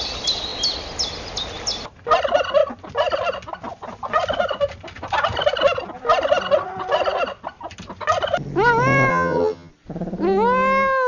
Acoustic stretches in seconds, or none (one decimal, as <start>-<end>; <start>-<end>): 0.0-9.1; 9.7-11.1